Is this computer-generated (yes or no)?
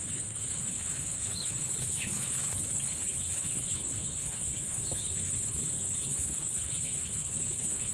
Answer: yes